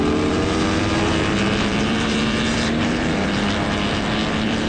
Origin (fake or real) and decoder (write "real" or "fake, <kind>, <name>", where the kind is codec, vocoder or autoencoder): fake, vocoder, BigVGAN v2